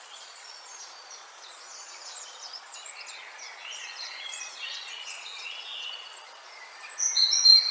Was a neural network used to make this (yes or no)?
yes